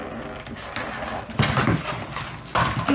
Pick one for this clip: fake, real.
real